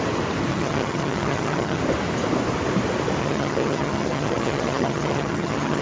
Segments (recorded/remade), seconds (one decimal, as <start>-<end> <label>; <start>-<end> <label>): 0.0-0.5 recorded; 0.5-1.8 remade; 1.8-3.2 recorded; 3.2-5.8 remade

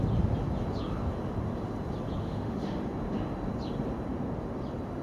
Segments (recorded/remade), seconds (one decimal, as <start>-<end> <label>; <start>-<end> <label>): 0.0-2.2 recorded; 2.2-2.8 remade; 2.8-5.0 recorded

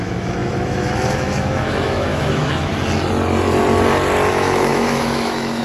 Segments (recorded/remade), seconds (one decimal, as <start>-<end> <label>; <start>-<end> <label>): 0.0-2.7 remade; 2.7-4.3 recorded; 4.3-5.6 remade